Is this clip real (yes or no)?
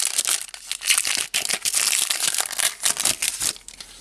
yes